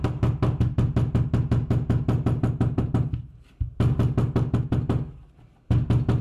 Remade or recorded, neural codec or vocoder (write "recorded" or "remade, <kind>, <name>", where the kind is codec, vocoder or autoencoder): recorded